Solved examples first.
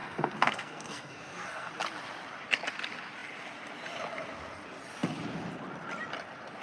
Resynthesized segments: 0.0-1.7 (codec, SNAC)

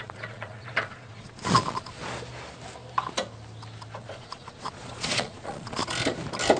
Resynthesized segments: 0.0-2.0 (vocoder, Vocos); 4.0-5.8

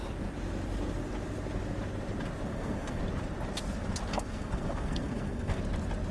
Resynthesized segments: 2.5-3.0 (codec, SNAC); 4.1-5.6

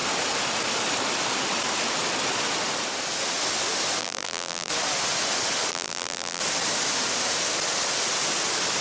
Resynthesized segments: 4.0-4.7 (vocoder, BigVGAN v2); 5.7-6.4

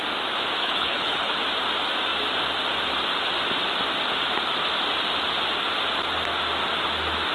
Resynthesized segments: 0.6-1.3 (codec, HILCodec)

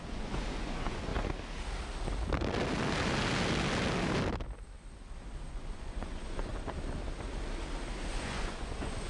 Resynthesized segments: 0.0-1.1 (vocoder, Vocos); 5.5-6.5; 8.1-9.1